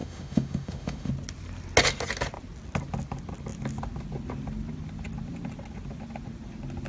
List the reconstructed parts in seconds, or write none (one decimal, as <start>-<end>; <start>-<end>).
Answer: 0.0-1.1